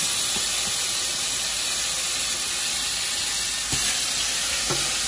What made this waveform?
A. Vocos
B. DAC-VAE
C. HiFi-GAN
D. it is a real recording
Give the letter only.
D